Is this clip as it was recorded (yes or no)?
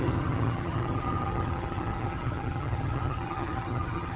no